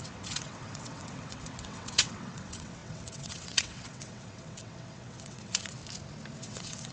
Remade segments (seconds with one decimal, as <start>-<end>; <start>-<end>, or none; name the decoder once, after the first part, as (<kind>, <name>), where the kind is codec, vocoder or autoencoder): 0.0-5.8 (vocoder, WaveNeXt); 6.4-6.9